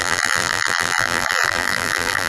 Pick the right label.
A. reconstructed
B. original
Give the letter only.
A